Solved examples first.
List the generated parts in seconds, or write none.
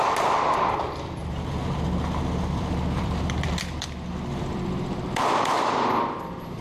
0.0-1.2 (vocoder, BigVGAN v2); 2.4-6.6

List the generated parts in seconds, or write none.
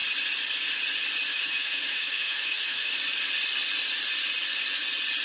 1.3-3.0 (autoencoder, DAC-VAE)